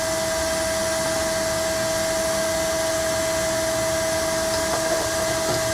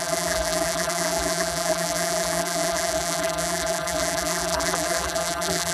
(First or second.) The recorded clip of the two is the first